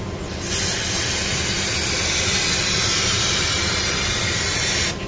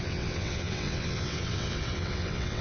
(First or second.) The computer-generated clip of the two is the second